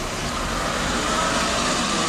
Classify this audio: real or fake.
real